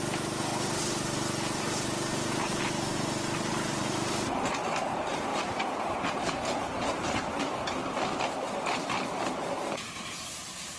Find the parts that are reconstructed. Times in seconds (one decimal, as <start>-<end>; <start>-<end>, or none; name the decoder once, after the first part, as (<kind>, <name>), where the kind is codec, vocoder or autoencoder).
0.0-0.5 (vocoder, BigVGAN v2); 1.6-2.5; 3.5-10.8